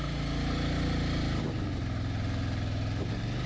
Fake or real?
real